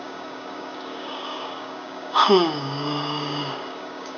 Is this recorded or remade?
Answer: remade